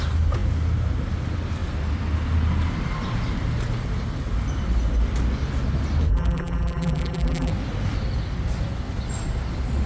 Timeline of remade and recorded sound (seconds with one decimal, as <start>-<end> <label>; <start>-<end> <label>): 0.0-6.1 recorded; 6.1-7.5 remade; 7.5-9.9 recorded